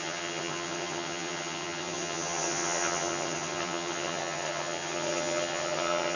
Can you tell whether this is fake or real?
fake